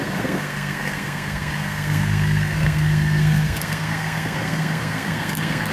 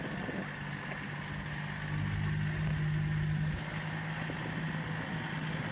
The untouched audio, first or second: second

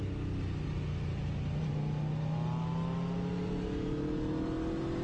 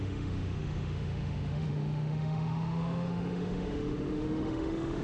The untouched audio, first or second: first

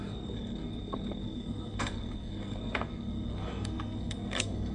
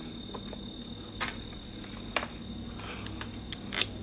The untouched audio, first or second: second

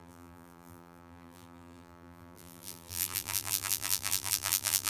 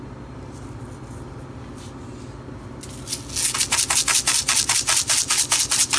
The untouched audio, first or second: second